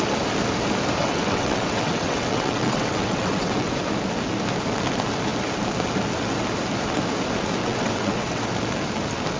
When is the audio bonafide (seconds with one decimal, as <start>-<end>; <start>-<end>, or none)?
0.0-1.0; 3.7-7.6; 8.4-9.4